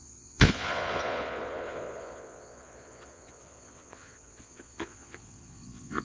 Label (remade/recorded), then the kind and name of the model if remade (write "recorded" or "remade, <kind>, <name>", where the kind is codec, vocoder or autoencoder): remade, vocoder, Vocos